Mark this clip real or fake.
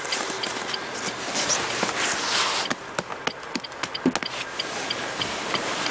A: real